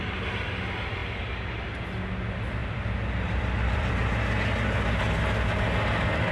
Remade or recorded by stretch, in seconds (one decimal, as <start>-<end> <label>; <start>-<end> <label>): 0.0-1.0 recorded; 1.0-1.8 remade; 1.8-2.6 recorded; 2.6-3.9 remade; 3.9-6.3 recorded